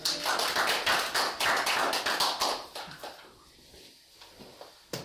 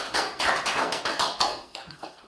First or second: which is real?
first